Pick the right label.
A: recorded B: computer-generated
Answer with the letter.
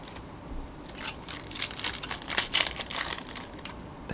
B